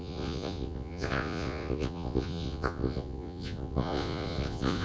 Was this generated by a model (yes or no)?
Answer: yes